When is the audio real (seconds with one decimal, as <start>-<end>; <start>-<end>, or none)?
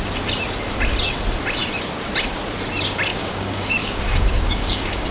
0.0-3.1